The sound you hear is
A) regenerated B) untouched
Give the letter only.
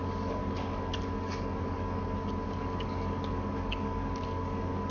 A